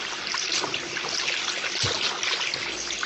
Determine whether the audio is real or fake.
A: real